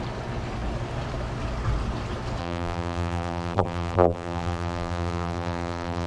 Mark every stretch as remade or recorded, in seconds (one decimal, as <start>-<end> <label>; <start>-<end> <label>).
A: 0.0-2.4 recorded; 2.4-6.1 remade